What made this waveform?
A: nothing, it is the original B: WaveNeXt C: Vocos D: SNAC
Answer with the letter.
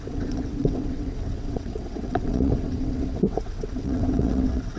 B